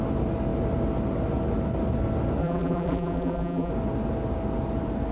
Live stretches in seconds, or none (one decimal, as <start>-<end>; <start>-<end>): 0.0-2.4; 3.7-5.1